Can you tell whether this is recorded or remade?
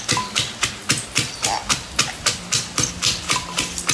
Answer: recorded